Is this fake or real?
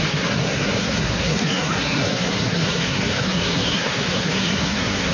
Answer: fake